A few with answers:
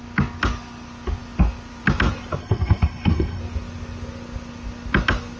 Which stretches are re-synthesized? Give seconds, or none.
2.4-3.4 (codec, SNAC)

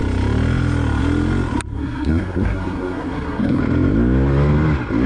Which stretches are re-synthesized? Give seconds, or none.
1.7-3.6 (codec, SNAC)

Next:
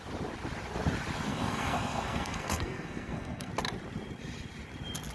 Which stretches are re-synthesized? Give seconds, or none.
1.3-3.5 (codec, SNAC)